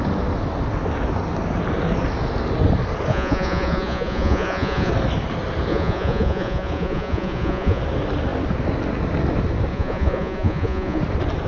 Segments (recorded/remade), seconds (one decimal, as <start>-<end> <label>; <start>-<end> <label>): 0.0-3.1 recorded; 3.1-4.9 remade; 4.9-5.7 recorded; 5.7-7.8 remade; 7.8-9.7 recorded; 9.7-11.0 remade; 11.0-11.5 recorded